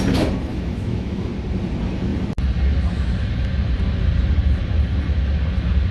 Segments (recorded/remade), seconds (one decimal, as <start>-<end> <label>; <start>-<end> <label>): 0.0-0.5 recorded; 0.5-1.3 remade; 1.3-5.9 recorded